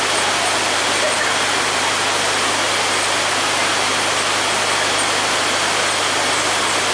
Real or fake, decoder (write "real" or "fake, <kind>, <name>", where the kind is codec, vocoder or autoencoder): real